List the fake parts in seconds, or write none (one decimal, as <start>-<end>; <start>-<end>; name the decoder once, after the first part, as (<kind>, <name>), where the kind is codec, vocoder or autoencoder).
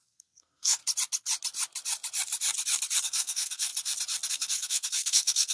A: 0.0-0.8 (codec, SNAC); 3.0-3.7; 4.3-5.5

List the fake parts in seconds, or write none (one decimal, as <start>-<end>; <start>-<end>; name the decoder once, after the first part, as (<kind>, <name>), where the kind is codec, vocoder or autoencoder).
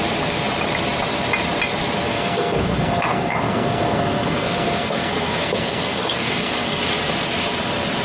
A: 2.1-6.8 (codec, SNAC)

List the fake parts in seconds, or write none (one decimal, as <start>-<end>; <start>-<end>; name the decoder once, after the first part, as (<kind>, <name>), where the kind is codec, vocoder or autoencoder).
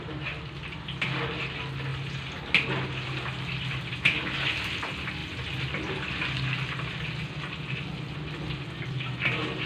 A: none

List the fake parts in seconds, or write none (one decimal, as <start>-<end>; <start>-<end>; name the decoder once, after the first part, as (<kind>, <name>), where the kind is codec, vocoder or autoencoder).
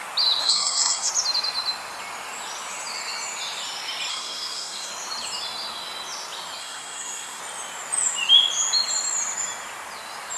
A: 0.4-1.1 (codec, SNAC); 4.1-4.9; 6.6-7.4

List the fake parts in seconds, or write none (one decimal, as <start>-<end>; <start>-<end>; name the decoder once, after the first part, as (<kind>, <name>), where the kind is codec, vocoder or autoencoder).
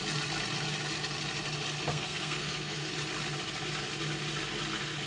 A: 1.9-2.9 (codec, SNAC)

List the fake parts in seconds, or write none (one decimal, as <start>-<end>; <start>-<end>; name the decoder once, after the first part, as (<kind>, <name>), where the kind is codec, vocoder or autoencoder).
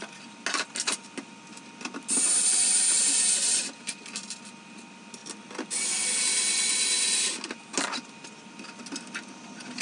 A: none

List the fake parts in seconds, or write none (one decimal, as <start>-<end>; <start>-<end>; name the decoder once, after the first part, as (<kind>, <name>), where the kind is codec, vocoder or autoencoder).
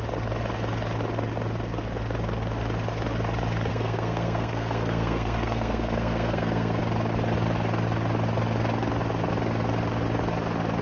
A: 3.7-6.8 (codec, SNAC)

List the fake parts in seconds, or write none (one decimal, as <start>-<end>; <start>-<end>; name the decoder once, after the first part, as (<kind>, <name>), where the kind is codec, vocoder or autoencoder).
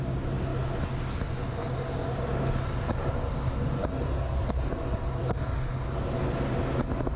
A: none